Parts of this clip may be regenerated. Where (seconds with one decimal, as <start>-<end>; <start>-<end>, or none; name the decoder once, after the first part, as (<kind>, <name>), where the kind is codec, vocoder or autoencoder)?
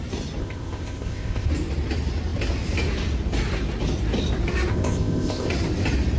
0.4-1.5 (codec, ZipCodec); 4.7-5.5